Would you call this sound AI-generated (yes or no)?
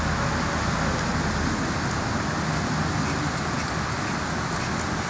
no